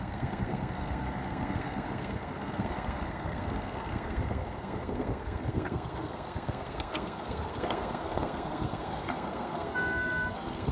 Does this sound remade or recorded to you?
remade